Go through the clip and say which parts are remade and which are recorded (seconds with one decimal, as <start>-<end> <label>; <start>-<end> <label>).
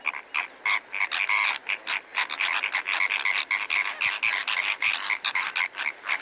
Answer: 0.0-4.4 recorded; 4.4-6.2 remade